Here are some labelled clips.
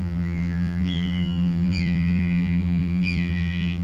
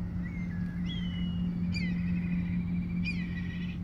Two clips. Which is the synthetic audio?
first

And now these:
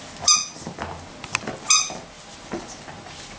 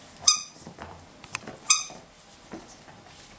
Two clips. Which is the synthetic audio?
second